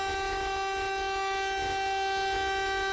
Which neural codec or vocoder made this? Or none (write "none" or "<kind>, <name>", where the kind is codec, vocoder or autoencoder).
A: none